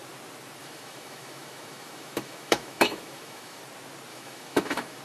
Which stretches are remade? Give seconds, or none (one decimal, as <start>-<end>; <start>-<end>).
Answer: 0.6-3.6; 4.1-5.0